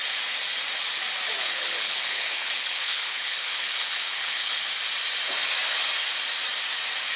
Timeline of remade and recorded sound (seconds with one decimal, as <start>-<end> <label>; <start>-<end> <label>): 0.0-1.4 recorded; 1.4-4.7 remade; 4.7-7.2 recorded